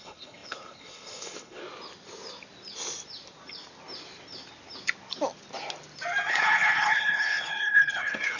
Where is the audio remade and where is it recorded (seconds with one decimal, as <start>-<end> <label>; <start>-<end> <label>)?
0.0-1.6 remade; 1.6-6.3 recorded; 6.3-8.4 remade